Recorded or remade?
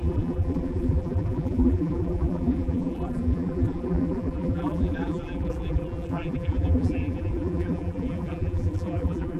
remade